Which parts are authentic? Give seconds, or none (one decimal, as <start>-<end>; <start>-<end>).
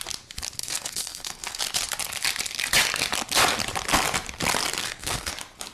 0.0-0.6; 1.6-4.8; 5.3-5.7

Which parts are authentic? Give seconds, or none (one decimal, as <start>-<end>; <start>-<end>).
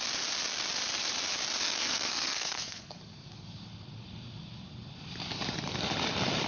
0.0-1.6; 2.8-6.5